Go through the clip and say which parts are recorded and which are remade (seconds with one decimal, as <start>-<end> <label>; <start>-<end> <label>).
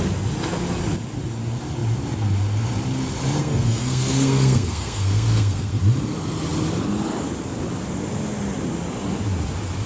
0.0-3.4 recorded; 3.4-5.8 remade; 5.8-9.9 recorded